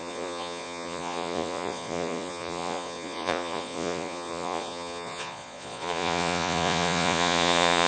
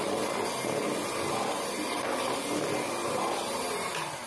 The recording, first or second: second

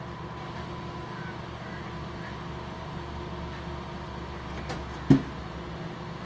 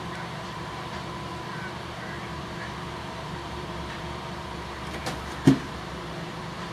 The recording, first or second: first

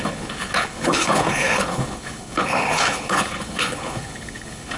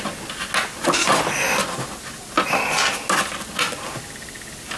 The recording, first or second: second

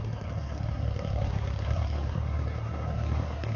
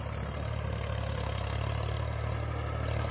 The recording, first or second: second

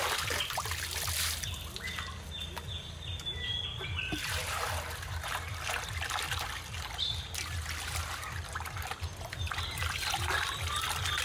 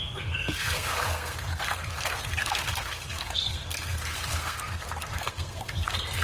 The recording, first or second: first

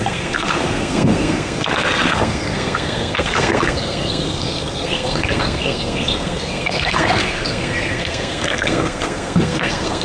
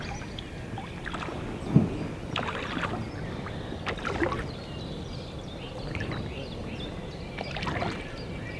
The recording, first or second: second